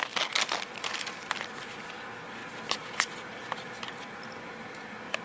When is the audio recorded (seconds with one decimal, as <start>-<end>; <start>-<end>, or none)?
0.0-2.4; 4.8-5.2